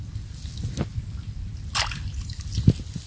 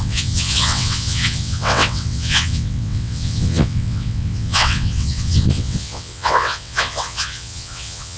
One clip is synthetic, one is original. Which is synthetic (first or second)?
second